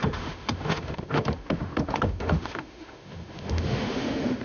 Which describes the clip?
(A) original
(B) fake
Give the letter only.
B